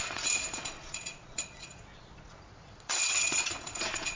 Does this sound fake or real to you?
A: fake